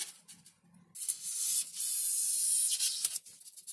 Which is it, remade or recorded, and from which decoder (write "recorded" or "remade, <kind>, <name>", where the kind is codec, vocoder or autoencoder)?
recorded